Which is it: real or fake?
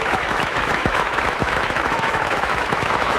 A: fake